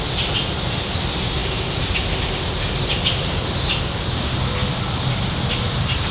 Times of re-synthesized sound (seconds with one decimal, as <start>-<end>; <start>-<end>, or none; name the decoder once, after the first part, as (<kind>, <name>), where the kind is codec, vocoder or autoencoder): none